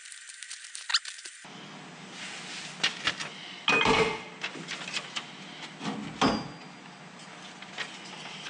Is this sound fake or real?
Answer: real